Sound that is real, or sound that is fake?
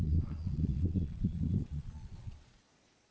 fake